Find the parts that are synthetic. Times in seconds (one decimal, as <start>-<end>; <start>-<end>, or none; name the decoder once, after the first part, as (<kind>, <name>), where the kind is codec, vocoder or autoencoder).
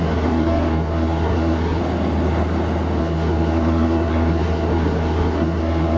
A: 0.0-1.8 (codec, SNAC); 3.0-6.0